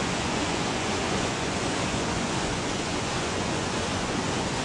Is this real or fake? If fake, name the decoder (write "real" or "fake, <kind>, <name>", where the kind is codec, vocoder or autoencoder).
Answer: fake, vocoder, Vocos